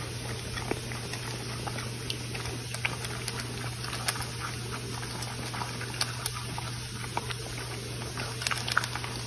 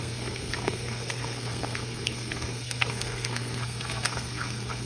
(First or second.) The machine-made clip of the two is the second